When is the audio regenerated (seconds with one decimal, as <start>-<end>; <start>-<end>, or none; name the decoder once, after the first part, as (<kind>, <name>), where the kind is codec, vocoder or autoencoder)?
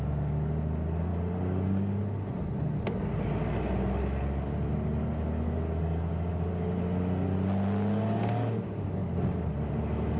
none